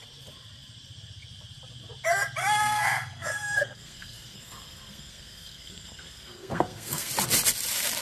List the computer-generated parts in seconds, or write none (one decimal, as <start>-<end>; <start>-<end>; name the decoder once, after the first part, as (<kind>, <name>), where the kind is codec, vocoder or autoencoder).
2.4-7.1 (codec, SNAC)